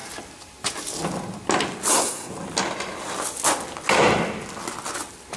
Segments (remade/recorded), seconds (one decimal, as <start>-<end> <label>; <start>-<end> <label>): 0.0-1.9 recorded; 1.9-2.3 remade; 2.3-5.4 recorded

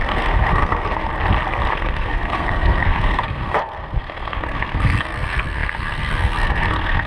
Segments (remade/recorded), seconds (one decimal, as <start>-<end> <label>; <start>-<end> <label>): 0.0-1.1 remade; 1.1-1.7 recorded; 1.7-7.1 remade